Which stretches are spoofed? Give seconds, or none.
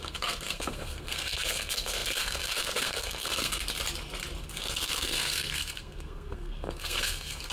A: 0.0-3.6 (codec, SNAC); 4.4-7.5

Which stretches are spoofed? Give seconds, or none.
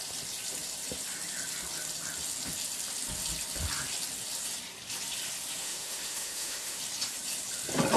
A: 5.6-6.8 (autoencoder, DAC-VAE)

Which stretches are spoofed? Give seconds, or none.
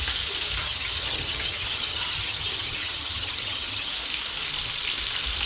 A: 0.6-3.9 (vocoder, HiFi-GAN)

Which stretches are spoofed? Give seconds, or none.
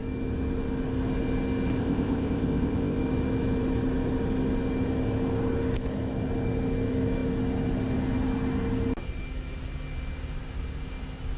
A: 1.8-3.0 (codec, ZipCodec)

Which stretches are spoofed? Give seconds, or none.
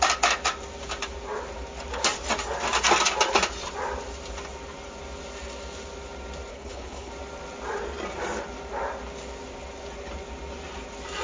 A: 6.5-7.1 (codec, HILCodec)